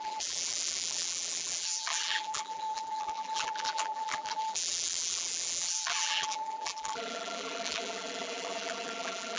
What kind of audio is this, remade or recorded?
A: remade